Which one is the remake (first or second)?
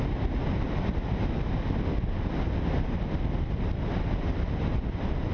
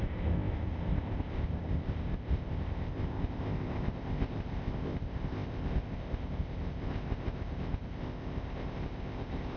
second